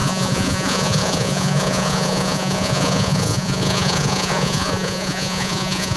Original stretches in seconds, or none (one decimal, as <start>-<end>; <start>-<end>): none